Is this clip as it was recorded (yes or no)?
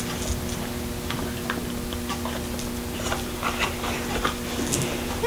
yes